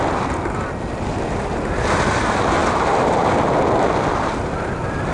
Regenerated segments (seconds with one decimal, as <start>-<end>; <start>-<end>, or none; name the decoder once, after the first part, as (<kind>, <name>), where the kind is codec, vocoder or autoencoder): none